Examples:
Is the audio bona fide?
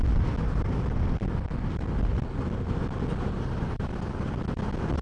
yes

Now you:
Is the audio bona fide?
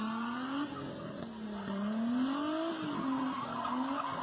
yes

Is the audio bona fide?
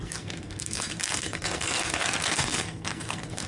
no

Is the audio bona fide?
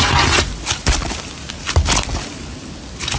yes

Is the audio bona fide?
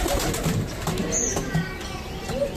yes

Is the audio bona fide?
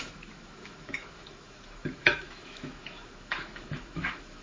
no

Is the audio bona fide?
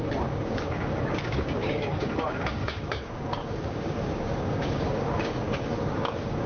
no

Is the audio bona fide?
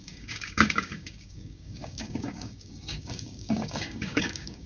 no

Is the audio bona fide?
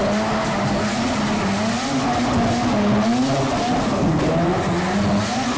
yes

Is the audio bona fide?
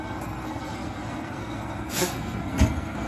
no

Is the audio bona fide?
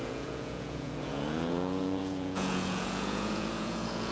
no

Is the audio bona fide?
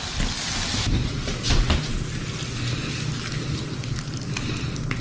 yes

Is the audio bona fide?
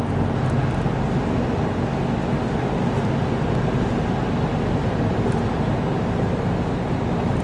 yes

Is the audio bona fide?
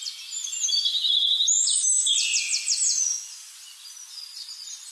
yes